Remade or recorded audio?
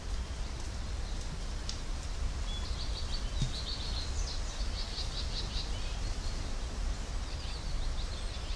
recorded